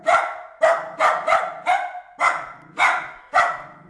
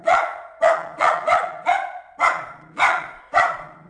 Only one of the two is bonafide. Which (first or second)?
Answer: first